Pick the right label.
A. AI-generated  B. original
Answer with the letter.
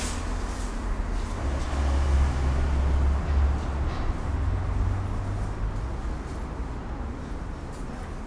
B